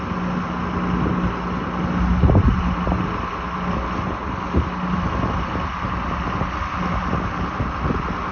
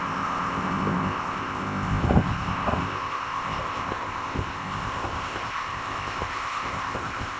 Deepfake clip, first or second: second